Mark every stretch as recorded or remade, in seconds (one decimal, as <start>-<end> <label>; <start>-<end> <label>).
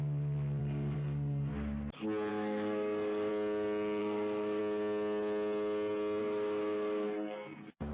0.0-0.6 recorded; 0.6-1.5 remade; 1.5-2.3 recorded; 2.3-3.3 remade; 3.3-4.0 recorded; 4.0-4.6 remade; 4.6-6.2 recorded; 6.2-7.9 remade